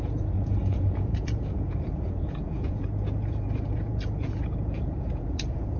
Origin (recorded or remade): remade